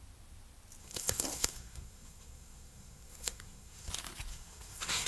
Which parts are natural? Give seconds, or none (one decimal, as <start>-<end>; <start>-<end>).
0.0-0.8; 3.9-4.3

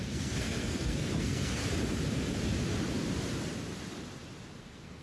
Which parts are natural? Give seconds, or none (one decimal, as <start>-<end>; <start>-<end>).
1.6-4.6

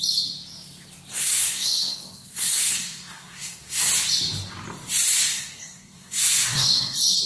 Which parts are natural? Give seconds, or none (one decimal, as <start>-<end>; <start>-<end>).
0.0-1.1; 3.9-5.3

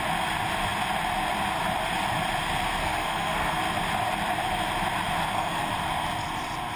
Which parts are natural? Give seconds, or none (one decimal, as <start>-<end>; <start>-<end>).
0.0-2.8; 3.5-5.2; 5.7-6.8